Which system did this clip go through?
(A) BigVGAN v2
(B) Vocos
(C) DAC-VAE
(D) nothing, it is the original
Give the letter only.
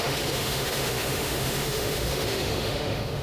C